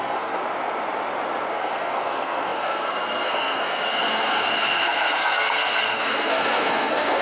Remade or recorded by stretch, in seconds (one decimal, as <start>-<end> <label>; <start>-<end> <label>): 0.0-0.4 remade; 0.4-1.5 recorded; 1.5-7.2 remade